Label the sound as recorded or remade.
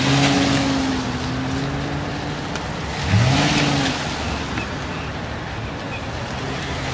recorded